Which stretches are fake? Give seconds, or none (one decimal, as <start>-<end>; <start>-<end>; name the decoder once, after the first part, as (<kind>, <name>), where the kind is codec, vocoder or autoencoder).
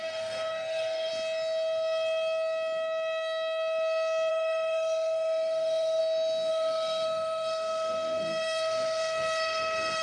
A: 0.0-1.1 (codec, SNAC); 4.3-6.0; 6.5-10.0